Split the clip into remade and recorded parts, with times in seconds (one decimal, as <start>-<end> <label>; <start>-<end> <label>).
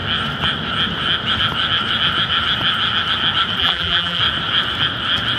0.0-3.6 recorded; 3.6-4.2 remade; 4.2-5.4 recorded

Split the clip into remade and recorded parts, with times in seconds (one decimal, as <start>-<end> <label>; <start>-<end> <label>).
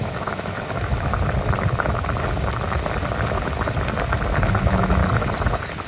0.0-1.1 remade; 1.1-4.6 recorded; 4.6-5.0 remade; 5.0-5.9 recorded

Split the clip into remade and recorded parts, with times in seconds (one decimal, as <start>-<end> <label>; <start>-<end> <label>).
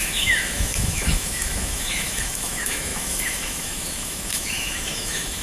0.0-5.4 remade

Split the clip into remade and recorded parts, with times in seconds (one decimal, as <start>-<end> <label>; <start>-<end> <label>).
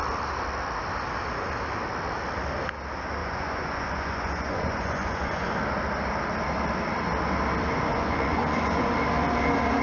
0.0-3.2 recorded; 3.2-5.5 remade; 5.5-7.9 recorded; 7.9-8.9 remade; 8.9-9.8 recorded